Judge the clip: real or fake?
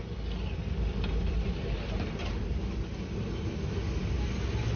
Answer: real